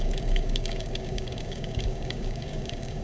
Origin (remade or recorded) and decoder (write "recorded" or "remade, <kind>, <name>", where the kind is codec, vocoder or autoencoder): remade, codec, DAC